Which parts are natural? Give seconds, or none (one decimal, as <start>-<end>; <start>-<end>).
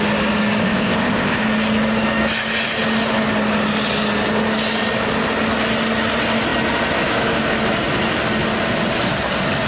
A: 0.0-0.6; 1.4-9.7